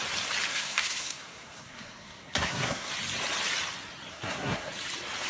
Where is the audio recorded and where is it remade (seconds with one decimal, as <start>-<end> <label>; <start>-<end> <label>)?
0.0-0.5 recorded; 0.5-2.9 remade; 2.9-4.1 recorded; 4.1-4.7 remade; 4.7-5.3 recorded